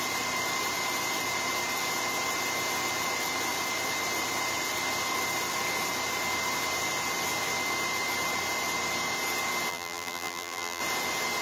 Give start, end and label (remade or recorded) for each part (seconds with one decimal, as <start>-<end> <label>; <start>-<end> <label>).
0.0-9.7 recorded; 9.7-10.8 remade; 10.8-11.4 recorded

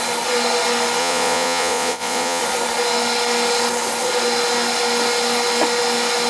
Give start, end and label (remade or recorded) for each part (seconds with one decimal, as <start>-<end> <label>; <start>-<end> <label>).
0.0-1.0 recorded; 1.0-2.4 remade; 2.4-6.3 recorded

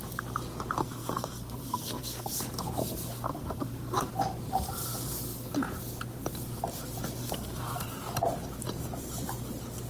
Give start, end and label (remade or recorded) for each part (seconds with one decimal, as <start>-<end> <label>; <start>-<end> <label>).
0.0-0.8 recorded; 0.8-2.4 remade; 2.4-2.8 recorded; 2.8-4.1 remade; 4.1-7.2 recorded; 7.2-7.9 remade; 7.9-9.9 recorded

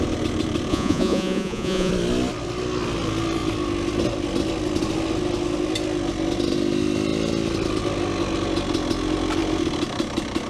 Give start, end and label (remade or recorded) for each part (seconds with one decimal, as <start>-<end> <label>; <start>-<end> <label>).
0.0-0.7 recorded; 0.7-1.9 remade; 1.9-10.5 recorded

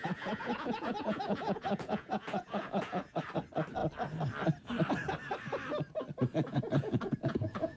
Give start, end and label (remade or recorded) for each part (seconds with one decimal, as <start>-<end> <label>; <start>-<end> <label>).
0.0-3.2 remade; 3.2-6.5 recorded; 6.5-7.8 remade